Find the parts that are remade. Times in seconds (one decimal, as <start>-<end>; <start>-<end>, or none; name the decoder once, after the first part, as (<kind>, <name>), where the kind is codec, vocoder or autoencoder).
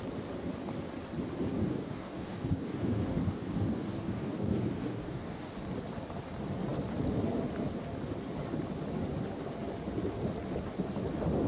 1.6-5.5 (codec, DAC)